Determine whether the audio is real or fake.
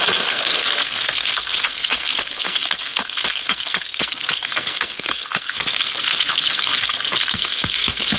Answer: fake